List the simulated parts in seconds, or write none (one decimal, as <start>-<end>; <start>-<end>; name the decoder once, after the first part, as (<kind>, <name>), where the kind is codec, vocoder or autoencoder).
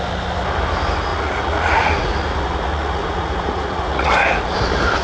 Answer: 1.1-4.1 (vocoder, Vocos)